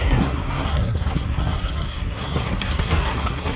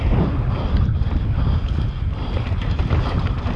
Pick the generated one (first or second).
first